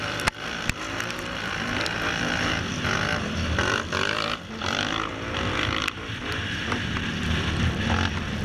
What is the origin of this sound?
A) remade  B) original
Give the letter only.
A